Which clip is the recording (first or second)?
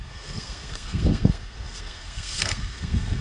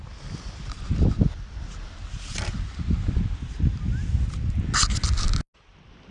second